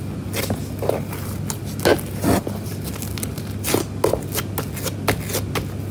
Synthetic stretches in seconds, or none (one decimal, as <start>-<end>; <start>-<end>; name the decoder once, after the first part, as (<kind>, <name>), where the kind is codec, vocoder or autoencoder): none